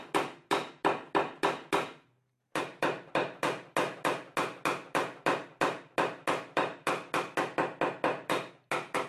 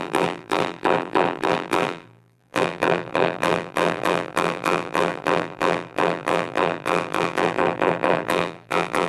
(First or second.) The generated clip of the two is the second